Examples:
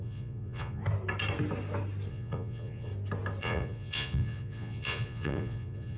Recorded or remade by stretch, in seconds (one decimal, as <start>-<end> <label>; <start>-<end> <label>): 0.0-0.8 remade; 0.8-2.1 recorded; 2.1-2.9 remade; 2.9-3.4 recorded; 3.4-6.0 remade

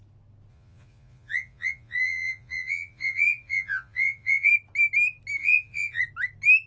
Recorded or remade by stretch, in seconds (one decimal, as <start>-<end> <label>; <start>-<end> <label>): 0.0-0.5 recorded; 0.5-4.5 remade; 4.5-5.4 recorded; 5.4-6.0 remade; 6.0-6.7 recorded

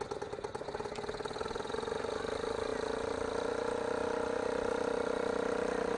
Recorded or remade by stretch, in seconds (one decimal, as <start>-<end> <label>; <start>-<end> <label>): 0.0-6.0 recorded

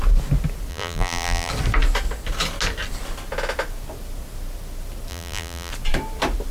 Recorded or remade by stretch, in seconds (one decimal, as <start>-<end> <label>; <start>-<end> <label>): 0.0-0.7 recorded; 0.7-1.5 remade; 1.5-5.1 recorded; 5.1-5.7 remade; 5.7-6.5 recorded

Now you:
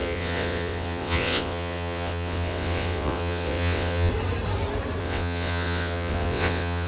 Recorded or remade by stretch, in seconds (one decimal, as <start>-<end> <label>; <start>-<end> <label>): 0.0-4.1 remade; 4.1-5.0 recorded; 5.0-6.9 remade

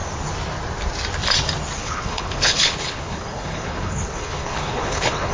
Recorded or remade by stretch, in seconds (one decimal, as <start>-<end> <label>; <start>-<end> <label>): 0.0-1.8 recorded; 1.8-5.3 remade

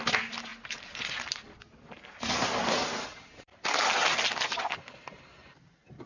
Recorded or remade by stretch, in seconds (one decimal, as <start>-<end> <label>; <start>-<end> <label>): 0.0-6.1 recorded

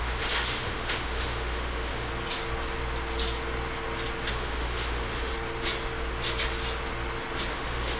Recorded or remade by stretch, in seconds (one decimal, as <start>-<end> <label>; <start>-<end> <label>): 0.0-2.1 remade; 2.1-4.3 recorded; 4.3-5.3 remade; 5.3-7.5 recorded; 7.5-8.0 remade